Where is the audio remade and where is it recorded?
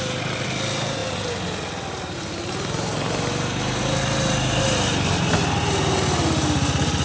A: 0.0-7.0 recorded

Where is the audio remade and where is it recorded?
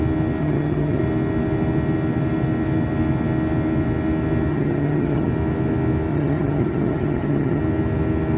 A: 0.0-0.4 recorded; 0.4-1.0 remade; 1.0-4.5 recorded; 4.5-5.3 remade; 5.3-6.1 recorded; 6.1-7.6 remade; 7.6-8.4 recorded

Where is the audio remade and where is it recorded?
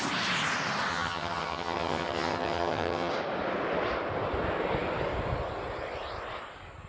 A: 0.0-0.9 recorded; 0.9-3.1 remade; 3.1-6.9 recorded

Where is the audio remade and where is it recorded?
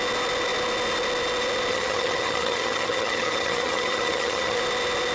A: 0.0-1.7 recorded; 1.7-4.6 remade; 4.6-5.1 recorded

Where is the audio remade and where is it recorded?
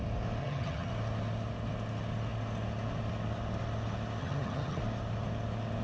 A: 0.0-0.4 recorded; 0.4-0.9 remade; 0.9-4.2 recorded; 4.2-4.8 remade; 4.8-5.8 recorded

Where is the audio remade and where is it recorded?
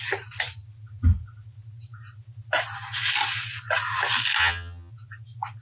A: 0.0-4.4 recorded; 4.4-4.9 remade; 4.9-5.6 recorded